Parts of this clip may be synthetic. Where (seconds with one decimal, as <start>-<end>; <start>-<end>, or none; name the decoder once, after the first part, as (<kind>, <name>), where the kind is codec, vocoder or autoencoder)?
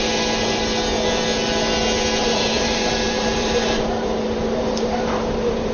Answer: 2.2-5.7 (vocoder, BigVGAN v2)